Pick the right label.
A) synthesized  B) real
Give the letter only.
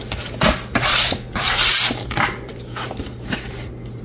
B